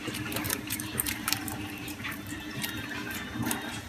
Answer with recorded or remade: remade